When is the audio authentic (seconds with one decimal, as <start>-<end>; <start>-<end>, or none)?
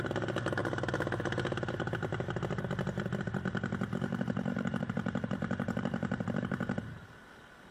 0.0-3.5; 7.3-7.7